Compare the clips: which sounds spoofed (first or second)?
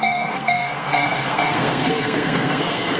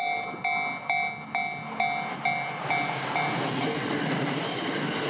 first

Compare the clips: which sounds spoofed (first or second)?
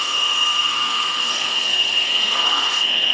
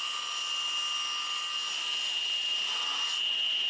first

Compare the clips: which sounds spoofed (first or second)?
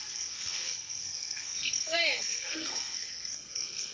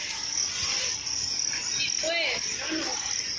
first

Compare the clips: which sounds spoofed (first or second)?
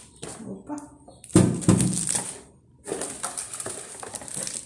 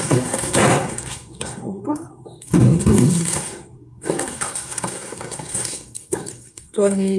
second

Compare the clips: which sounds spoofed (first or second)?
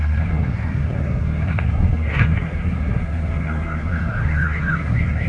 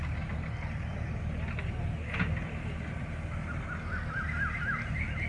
first